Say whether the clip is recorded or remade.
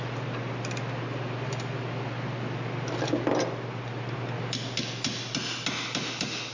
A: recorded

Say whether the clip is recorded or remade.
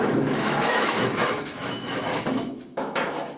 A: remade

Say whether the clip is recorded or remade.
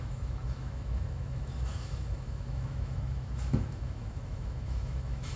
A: remade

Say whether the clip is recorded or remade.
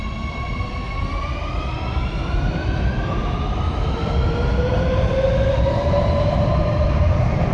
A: recorded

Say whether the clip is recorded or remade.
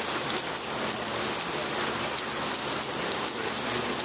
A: recorded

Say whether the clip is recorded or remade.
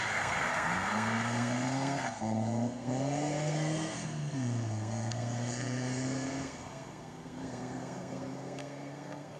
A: remade